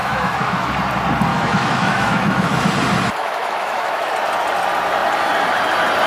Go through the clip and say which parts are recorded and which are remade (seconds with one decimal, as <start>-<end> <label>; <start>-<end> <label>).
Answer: 0.0-0.7 remade; 0.7-1.3 recorded; 1.3-2.5 remade; 2.5-3.2 recorded; 3.2-4.1 remade; 4.1-6.1 recorded